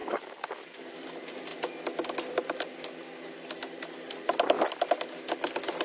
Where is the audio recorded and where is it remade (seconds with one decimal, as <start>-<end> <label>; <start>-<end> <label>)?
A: 0.0-0.9 remade; 0.9-5.8 recorded